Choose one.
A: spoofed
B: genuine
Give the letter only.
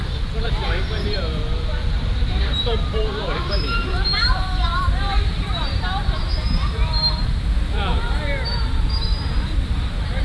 A